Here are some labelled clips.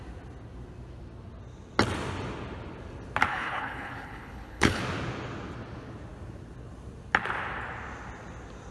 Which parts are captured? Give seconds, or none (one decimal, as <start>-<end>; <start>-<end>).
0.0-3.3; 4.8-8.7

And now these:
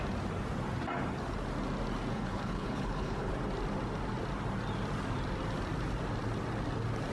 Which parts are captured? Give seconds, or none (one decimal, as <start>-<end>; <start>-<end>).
0.0-2.1; 3.3-7.1

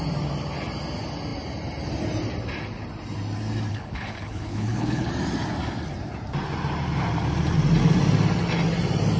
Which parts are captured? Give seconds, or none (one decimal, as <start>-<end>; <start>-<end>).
0.0-3.7; 5.1-9.2

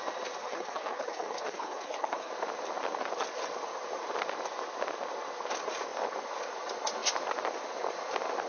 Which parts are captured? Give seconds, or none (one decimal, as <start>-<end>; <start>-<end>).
0.0-0.4; 2.3-8.5